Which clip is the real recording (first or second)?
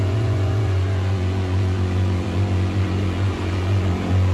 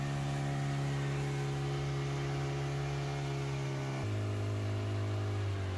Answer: second